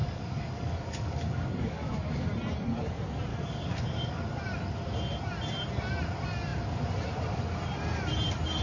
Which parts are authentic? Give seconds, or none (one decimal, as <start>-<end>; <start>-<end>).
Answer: 2.3-3.3; 4.2-8.6